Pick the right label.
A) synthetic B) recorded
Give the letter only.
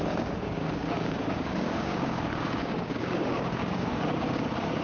A